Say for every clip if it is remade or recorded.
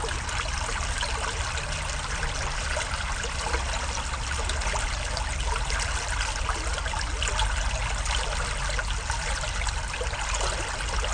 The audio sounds recorded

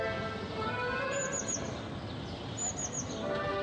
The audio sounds recorded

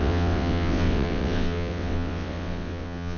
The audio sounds remade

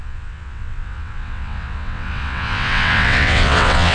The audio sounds remade